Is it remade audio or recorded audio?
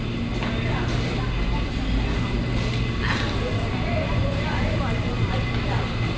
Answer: recorded